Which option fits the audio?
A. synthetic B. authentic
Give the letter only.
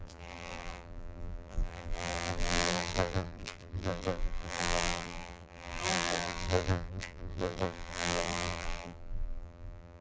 A